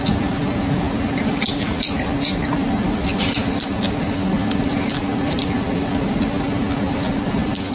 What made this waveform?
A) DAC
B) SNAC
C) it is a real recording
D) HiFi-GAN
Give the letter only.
C